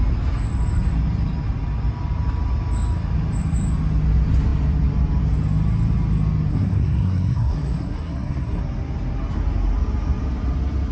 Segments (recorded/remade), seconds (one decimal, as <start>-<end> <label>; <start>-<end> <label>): 0.0-6.5 recorded; 6.5-8.6 remade; 8.6-10.9 recorded